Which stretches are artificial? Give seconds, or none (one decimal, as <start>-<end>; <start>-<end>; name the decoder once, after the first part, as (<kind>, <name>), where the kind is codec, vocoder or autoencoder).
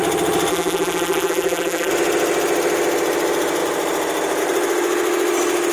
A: 0.5-1.9 (vocoder, BigVGAN v2)